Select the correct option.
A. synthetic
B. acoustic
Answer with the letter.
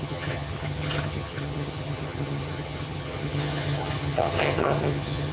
A